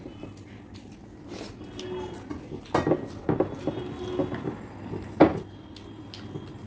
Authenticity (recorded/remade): recorded